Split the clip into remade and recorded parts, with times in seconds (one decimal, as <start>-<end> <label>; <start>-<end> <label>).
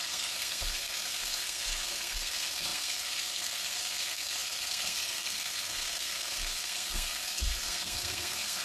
0.0-8.6 remade